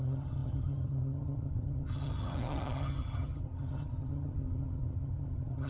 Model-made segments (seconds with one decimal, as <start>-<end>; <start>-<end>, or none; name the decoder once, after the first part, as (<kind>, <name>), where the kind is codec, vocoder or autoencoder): 0.0-5.7 (vocoder, HiFi-GAN)